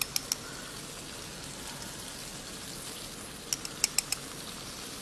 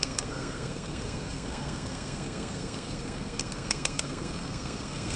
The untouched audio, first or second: first